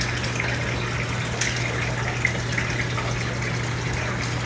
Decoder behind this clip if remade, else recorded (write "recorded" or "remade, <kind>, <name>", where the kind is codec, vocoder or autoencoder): recorded